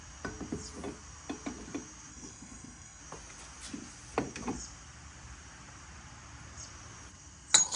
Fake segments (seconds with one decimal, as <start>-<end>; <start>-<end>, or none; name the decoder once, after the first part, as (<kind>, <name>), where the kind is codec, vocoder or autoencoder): 2.1-3.0 (codec, SNAC)